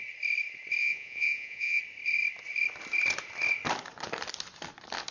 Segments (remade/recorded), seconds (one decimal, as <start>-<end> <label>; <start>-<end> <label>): 0.0-0.8 recorded; 0.8-1.8 remade; 1.8-5.1 recorded